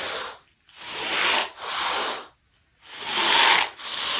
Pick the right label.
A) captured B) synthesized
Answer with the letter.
A